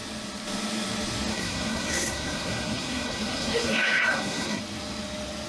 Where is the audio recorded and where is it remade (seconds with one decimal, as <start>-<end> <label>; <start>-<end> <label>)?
0.0-1.3 recorded; 1.3-4.6 remade; 4.6-5.5 recorded